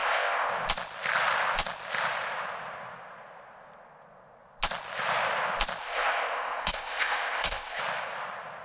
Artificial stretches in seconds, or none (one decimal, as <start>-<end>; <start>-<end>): 0.0-0.5; 5.8-7.8